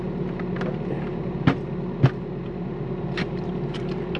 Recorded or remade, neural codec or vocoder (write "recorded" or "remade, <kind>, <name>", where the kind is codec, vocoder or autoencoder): recorded